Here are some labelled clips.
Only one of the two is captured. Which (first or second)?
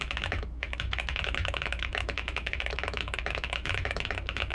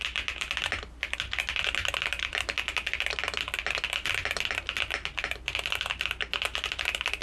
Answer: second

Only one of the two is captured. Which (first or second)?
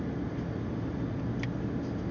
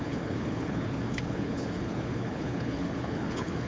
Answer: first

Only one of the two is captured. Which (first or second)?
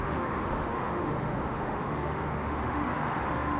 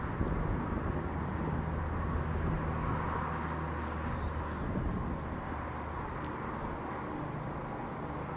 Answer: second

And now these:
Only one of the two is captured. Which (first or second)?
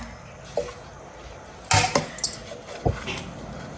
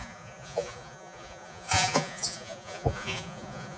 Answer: first